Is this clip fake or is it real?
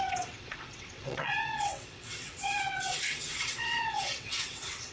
fake